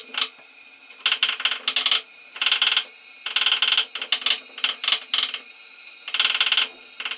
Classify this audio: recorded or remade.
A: recorded